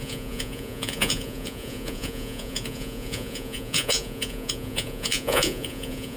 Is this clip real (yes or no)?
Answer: no